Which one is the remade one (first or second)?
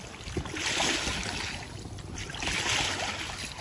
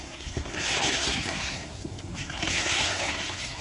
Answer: second